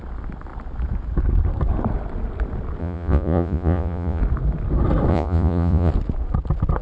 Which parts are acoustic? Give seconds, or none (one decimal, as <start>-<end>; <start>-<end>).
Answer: 0.0-2.8; 4.2-5.1; 5.9-6.8